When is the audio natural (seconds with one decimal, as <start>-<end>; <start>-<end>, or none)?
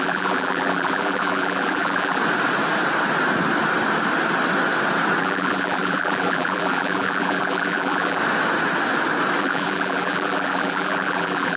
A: 2.2-5.2; 8.2-9.4